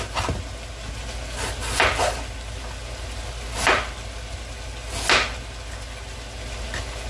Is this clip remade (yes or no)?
no